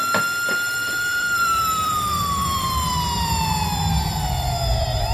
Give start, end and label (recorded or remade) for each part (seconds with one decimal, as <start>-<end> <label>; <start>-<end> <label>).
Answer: 0.0-0.8 recorded; 0.8-2.9 remade; 2.9-5.1 recorded